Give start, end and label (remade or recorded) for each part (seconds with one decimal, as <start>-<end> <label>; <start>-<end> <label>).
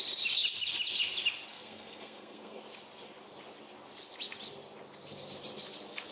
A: 0.0-1.5 recorded; 1.5-2.6 remade; 2.6-6.1 recorded